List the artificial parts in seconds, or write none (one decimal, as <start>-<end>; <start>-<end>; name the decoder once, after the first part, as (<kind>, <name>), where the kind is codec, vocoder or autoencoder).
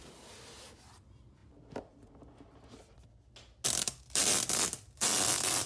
none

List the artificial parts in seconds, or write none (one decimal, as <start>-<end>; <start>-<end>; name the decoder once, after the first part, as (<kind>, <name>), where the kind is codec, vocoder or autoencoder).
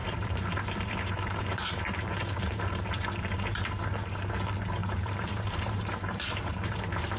0.0-4.3 (vocoder, BigVGAN v2); 4.8-6.8